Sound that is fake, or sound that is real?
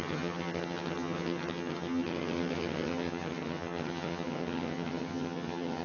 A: fake